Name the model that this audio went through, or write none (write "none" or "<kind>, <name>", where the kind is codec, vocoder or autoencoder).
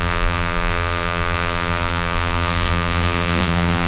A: vocoder, BigVGAN v2